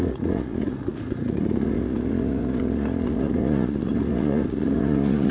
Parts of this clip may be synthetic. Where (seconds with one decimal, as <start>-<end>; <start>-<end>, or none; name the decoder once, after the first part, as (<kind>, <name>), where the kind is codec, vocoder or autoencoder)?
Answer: 0.0-5.3 (vocoder, Vocos)